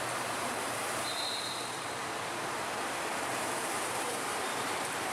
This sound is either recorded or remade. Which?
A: remade